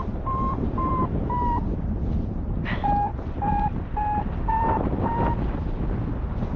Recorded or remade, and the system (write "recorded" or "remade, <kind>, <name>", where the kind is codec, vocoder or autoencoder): remade, vocoder, BigVGAN v2